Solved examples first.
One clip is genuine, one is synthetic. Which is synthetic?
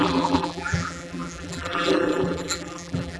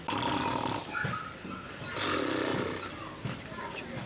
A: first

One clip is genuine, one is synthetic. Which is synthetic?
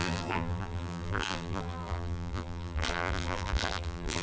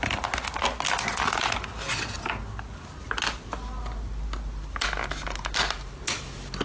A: first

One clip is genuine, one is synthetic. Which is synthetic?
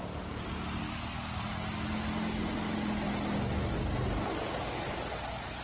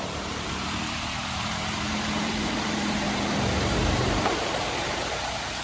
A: second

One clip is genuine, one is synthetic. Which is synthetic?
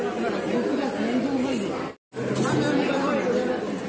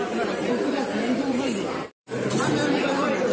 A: second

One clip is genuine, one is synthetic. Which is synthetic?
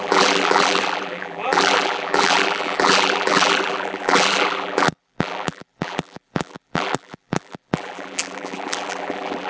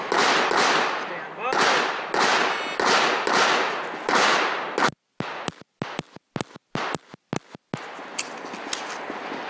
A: first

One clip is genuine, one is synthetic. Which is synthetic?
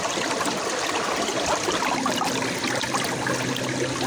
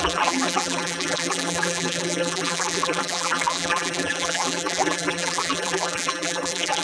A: second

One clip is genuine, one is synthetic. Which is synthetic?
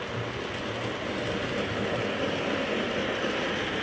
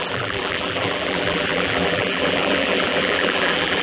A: second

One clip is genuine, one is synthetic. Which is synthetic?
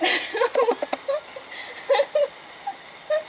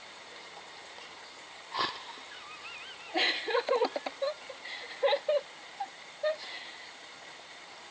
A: second